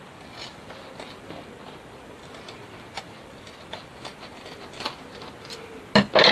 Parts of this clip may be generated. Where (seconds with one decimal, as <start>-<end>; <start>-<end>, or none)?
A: 0.0-4.1